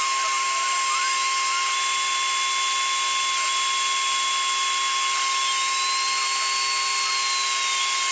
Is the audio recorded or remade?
recorded